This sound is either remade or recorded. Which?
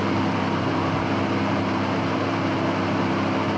remade